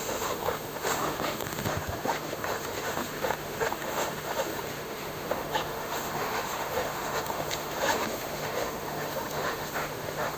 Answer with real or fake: fake